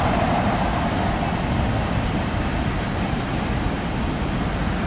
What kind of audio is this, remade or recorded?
recorded